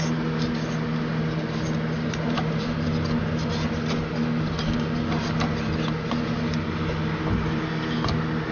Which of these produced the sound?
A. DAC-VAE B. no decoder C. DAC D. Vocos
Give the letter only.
B